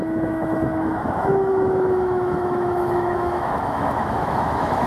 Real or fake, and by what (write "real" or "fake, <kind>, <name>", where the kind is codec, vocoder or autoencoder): fake, autoencoder, DAC-VAE